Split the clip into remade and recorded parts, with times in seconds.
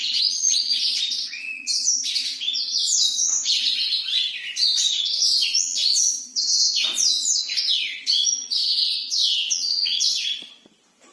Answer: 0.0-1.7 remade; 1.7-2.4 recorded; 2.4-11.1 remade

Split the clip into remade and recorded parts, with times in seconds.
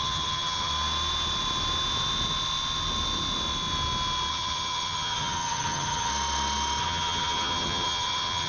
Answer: 0.0-0.7 remade; 0.7-4.3 recorded; 4.3-6.1 remade; 6.1-6.8 recorded; 6.8-8.5 remade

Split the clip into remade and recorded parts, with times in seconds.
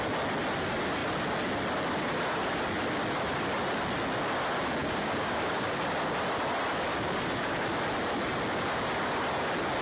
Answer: 0.0-4.8 recorded; 4.8-5.8 remade; 5.8-6.9 recorded; 6.9-7.5 remade; 7.5-9.8 recorded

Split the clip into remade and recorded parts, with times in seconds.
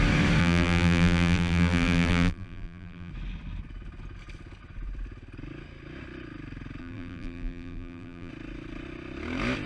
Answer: 0.0-0.4 recorded; 0.4-3.1 remade; 3.1-6.8 recorded; 6.8-8.3 remade; 8.3-9.7 recorded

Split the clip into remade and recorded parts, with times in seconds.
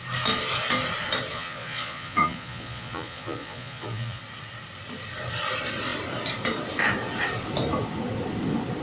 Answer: 0.0-1.3 recorded; 1.3-4.2 remade; 4.2-8.8 recorded